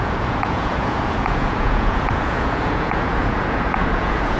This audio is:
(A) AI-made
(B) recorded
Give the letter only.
A